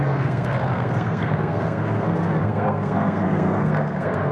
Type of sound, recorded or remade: remade